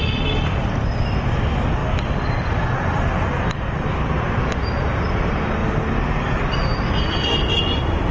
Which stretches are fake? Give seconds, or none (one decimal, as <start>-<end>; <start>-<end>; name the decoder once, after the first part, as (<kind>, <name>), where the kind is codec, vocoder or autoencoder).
none